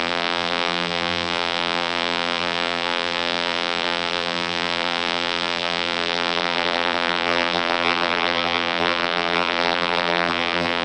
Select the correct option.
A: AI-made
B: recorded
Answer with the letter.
A